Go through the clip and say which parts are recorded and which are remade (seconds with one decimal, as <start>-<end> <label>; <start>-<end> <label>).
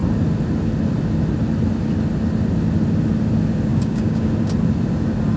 0.0-3.7 recorded; 3.7-4.2 remade; 4.2-5.4 recorded